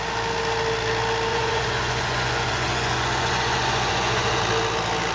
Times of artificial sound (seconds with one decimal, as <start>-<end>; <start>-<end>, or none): 1.3-4.4